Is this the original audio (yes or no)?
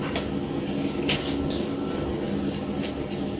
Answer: yes